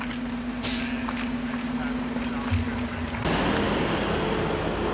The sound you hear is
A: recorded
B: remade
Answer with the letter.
A